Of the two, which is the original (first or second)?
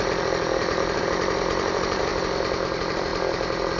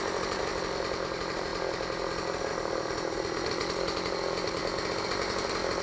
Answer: second